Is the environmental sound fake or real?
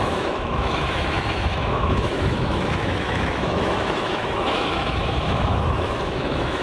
fake